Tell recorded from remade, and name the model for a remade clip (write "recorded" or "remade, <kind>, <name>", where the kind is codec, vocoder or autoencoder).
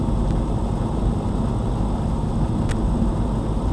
recorded